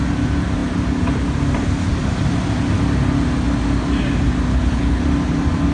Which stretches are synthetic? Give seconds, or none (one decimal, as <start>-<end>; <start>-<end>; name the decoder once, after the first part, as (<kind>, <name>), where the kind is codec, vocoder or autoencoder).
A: 4.5-5.0 (codec, HILCodec)